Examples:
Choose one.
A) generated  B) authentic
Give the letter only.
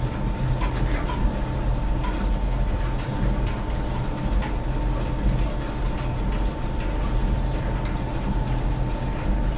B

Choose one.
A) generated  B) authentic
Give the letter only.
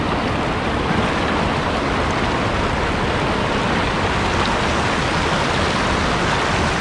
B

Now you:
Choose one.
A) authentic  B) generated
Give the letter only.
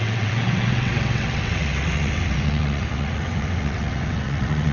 B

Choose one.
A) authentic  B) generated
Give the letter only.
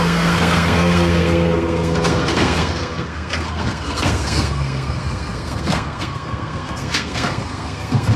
B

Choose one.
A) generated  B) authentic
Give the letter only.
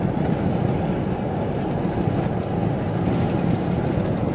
B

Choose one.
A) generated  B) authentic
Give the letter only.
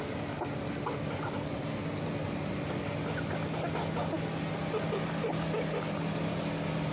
B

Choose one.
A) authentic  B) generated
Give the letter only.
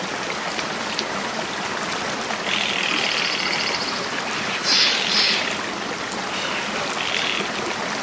A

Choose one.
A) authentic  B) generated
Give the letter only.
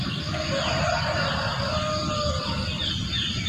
A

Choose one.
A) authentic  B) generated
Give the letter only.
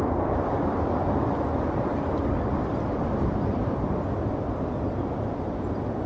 A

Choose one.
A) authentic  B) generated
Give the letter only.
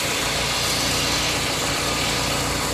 A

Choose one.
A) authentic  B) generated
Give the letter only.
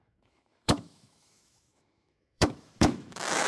B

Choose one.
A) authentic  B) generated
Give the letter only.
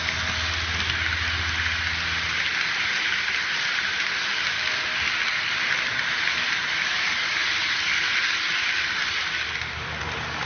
A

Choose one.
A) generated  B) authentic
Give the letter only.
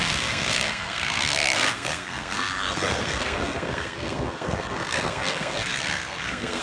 A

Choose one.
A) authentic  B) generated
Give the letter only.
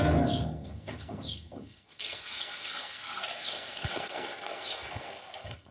B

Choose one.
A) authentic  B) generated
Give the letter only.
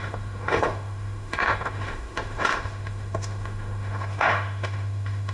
B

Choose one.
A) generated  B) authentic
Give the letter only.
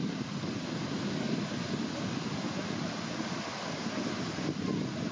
B